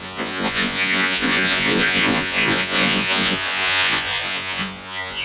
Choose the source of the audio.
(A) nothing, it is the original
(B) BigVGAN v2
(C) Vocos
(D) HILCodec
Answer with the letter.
C